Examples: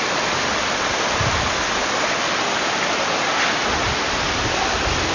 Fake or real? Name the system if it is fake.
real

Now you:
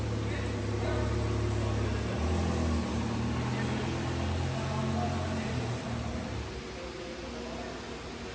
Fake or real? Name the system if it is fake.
real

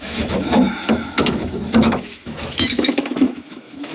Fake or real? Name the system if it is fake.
fake, autoencoder, DAC-VAE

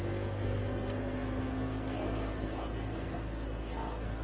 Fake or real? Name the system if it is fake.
fake, codec, SNAC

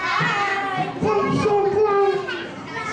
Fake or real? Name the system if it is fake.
real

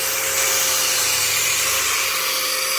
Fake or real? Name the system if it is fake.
real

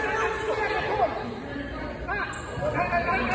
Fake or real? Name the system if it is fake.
real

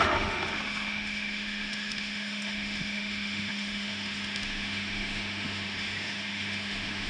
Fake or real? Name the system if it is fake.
fake, autoencoder, DAC-VAE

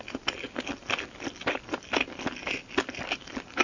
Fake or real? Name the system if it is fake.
real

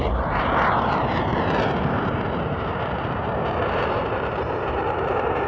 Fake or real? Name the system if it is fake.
fake, vocoder, BigVGAN v2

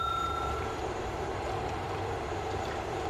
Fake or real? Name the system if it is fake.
fake, vocoder, BigVGAN v2